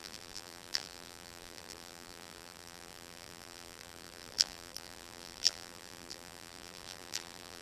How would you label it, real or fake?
fake